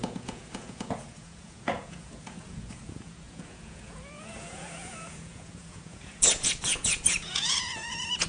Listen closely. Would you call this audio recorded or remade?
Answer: remade